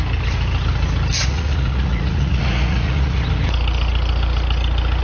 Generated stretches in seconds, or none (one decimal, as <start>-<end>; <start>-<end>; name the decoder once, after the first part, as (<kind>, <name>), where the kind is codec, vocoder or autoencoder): 1.2-3.2 (vocoder, Vocos)